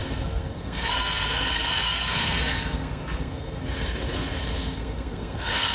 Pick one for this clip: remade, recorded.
remade